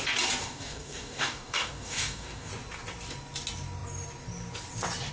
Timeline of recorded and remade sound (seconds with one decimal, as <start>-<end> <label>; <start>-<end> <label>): 0.0-0.4 recorded; 0.4-2.5 remade; 2.5-5.1 recorded